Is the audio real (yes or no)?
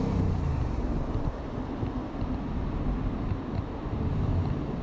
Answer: yes